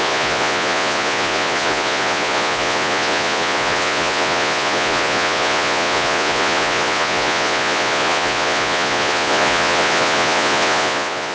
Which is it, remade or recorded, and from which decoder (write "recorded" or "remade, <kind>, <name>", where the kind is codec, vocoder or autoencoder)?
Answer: remade, vocoder, Vocos